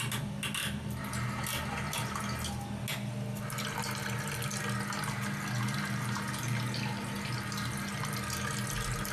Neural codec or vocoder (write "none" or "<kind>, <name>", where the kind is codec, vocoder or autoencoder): none